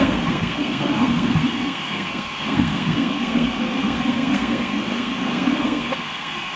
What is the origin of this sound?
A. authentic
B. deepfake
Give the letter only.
B